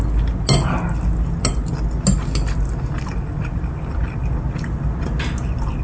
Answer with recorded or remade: recorded